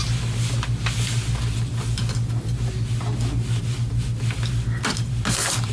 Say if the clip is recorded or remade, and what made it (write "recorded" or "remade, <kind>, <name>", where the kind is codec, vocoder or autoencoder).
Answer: recorded